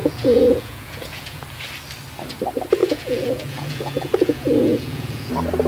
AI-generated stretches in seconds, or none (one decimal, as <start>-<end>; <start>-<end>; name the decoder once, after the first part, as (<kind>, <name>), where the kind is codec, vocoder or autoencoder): 0.0-1.4 (vocoder, Vocos); 2.8-5.3